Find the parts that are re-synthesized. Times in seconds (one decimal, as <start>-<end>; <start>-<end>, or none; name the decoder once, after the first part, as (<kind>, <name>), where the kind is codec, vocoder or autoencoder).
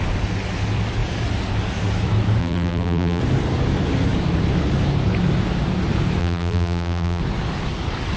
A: 2.4-3.2 (vocoder, BigVGAN v2); 6.2-7.2